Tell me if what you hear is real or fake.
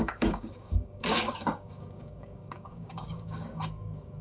fake